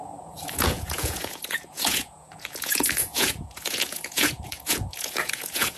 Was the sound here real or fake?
fake